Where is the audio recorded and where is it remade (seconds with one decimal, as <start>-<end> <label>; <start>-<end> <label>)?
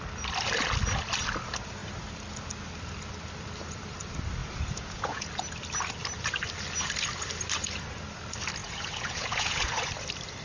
0.0-4.4 recorded; 4.4-5.3 remade; 5.3-8.6 recorded; 8.6-9.9 remade; 9.9-10.4 recorded